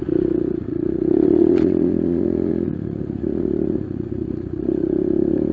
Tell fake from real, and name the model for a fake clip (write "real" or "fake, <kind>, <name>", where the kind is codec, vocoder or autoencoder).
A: fake, vocoder, Vocos